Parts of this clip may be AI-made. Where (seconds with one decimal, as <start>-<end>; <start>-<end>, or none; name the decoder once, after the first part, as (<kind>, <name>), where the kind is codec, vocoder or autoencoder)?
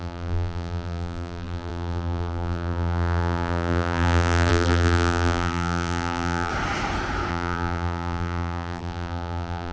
0.0-6.5 (vocoder, BigVGAN v2); 7.3-9.7